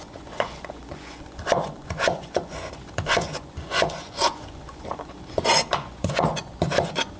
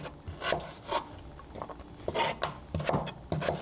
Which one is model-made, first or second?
first